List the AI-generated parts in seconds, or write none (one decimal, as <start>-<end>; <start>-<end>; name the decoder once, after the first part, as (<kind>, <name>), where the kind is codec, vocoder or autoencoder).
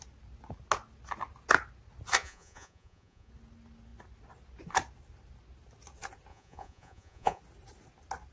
2.2-3.3 (vocoder, Vocos); 6.3-7.4